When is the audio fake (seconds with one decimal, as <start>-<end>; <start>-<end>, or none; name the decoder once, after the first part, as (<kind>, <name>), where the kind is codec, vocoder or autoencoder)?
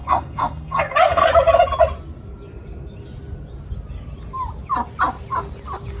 0.0-1.3 (codec, SNAC)